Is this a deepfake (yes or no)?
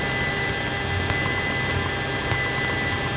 no